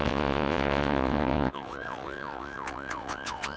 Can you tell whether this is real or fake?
fake